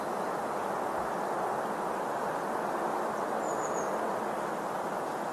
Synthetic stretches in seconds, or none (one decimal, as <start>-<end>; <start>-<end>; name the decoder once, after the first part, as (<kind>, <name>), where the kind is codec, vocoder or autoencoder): 2.1-3.5 (vocoder, BigVGAN v2); 4.1-5.3